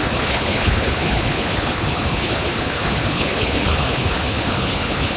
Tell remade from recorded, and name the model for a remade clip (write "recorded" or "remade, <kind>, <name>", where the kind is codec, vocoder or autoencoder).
remade, codec, HILCodec